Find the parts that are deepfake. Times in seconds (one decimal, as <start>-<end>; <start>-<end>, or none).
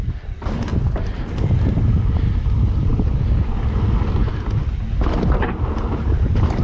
none